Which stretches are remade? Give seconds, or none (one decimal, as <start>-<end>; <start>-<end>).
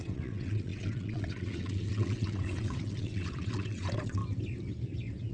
0.0-4.2